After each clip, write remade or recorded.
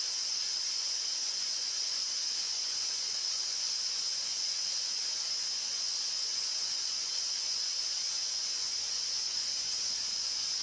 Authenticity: remade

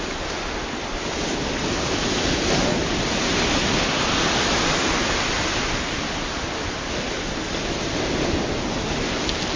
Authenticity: recorded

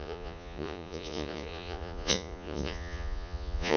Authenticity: remade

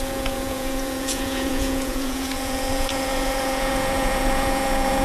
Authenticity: remade